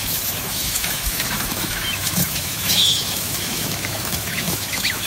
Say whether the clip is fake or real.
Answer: fake